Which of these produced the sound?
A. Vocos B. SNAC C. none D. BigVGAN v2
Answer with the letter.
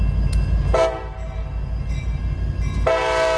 C